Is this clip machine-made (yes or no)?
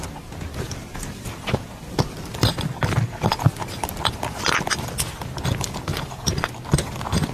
no